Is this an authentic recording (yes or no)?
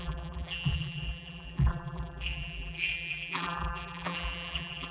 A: no